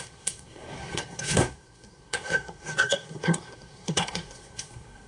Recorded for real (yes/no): no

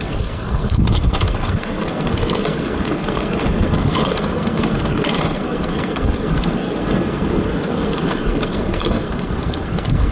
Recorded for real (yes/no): no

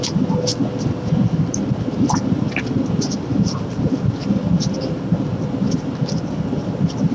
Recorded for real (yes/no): yes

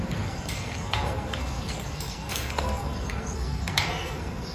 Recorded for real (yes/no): no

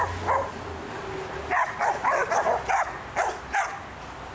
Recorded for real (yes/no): yes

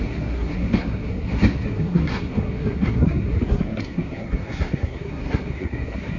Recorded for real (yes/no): no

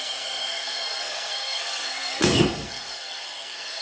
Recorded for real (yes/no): no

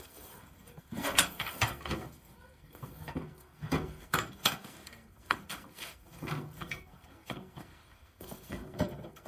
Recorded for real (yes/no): no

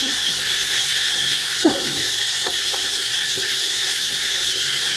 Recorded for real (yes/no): no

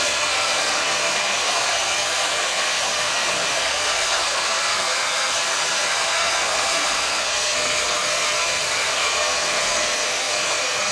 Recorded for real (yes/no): no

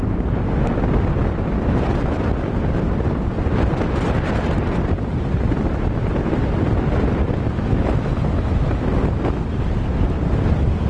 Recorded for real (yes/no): yes